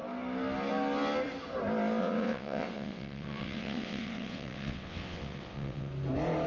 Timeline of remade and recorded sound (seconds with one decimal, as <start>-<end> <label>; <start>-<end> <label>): 0.0-2.0 recorded; 2.0-5.9 remade; 5.9-6.5 recorded